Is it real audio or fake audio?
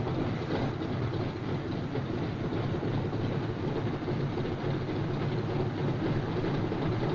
real